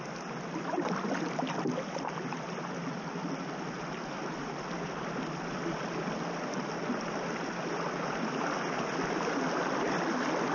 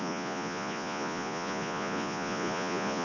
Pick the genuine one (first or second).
first